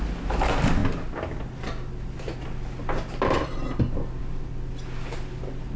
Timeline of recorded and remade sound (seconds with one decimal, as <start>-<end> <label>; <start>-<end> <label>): 0.0-5.8 recorded